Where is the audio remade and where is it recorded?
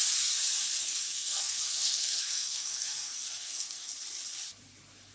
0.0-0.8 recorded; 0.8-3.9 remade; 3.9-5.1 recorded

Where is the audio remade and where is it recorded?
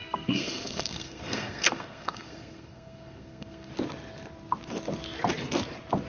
0.0-3.7 remade; 3.7-6.1 recorded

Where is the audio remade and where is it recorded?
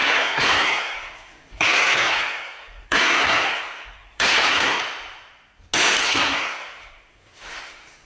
0.0-4.8 remade; 4.8-6.0 recorded; 6.0-8.1 remade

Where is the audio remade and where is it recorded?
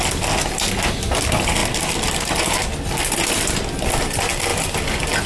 0.0-5.3 recorded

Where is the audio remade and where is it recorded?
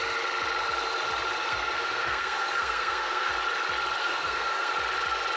0.0-1.4 recorded; 1.4-3.3 remade; 3.3-4.0 recorded; 4.0-4.7 remade; 4.7-5.4 recorded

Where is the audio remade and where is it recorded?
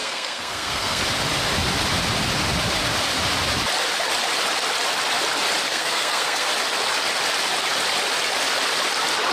0.0-1.0 remade; 1.0-5.7 recorded; 5.7-6.5 remade; 6.5-9.3 recorded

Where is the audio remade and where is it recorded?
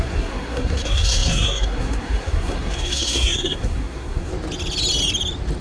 0.0-4.3 remade; 4.3-5.6 recorded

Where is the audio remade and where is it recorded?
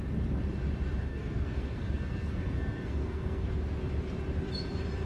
0.0-1.1 recorded; 1.1-3.5 remade; 3.5-5.1 recorded